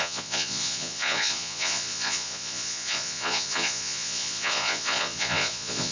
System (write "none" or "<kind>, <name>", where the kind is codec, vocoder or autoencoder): vocoder, Vocos